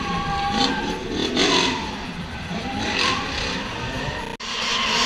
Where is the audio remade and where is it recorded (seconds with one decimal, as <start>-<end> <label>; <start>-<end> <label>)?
0.0-1.2 recorded; 1.2-4.0 remade; 4.0-5.1 recorded